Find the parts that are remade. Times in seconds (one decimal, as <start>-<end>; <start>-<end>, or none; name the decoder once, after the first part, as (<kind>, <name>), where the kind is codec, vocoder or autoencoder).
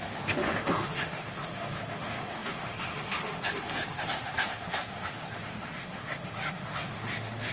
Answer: 0.0-7.5 (autoencoder, DAC-VAE)